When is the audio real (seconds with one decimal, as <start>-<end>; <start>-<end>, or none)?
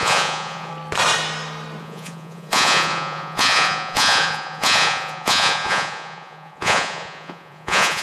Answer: 0.7-1.8